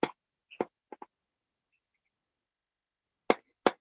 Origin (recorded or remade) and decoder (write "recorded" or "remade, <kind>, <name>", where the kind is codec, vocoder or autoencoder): recorded